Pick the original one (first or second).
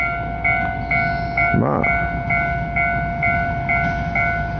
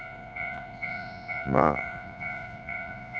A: first